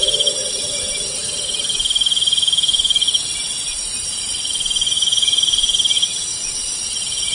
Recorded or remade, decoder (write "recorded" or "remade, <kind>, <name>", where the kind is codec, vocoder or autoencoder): remade, vocoder, BigVGAN v2